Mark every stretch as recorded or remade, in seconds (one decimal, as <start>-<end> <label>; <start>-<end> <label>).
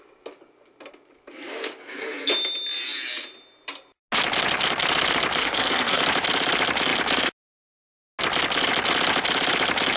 0.0-1.8 recorded; 1.8-2.3 remade; 2.3-5.4 recorded; 5.4-6.0 remade; 6.0-10.0 recorded